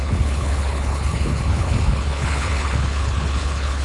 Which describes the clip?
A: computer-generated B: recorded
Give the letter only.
A